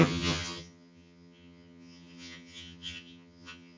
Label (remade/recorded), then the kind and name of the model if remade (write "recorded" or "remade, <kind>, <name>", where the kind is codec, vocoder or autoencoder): remade, vocoder, HiFi-GAN